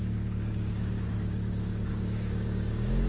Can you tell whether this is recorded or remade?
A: remade